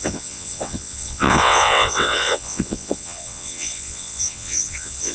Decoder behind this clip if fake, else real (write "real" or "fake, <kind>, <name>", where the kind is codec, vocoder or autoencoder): fake, vocoder, WaveNeXt